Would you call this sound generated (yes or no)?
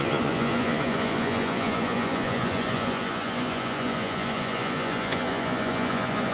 yes